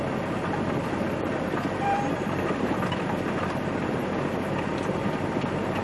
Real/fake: fake